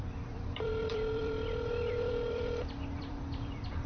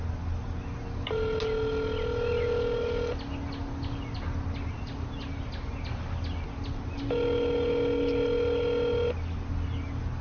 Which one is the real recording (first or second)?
second